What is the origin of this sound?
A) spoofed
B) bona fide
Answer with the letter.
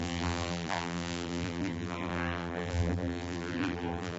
A